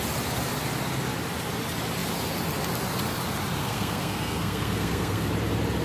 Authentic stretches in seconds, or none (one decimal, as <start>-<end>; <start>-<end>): 0.0-3.6; 5.3-5.8